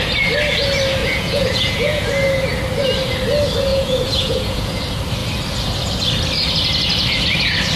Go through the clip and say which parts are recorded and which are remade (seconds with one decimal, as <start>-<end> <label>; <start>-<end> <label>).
0.0-1.0 recorded; 1.0-2.1 remade; 2.1-3.7 recorded; 3.7-4.8 remade; 4.8-7.8 recorded